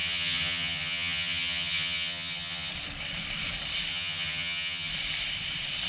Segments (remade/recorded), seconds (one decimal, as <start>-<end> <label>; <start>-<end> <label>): 0.0-2.7 remade; 2.7-3.9 recorded; 3.9-4.9 remade; 4.9-5.9 recorded